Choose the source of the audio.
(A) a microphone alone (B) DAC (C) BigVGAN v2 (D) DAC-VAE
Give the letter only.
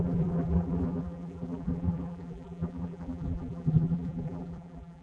C